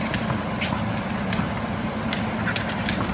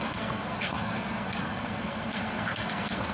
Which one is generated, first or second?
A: second